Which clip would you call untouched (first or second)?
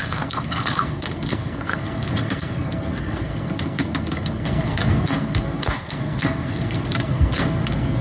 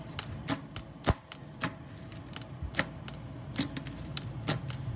second